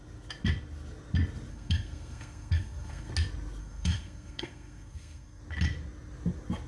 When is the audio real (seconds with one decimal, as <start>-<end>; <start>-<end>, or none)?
0.0-1.5; 3.1-3.6; 5.4-6.7